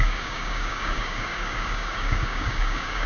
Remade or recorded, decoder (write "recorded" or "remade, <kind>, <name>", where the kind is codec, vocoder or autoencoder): remade, codec, DAC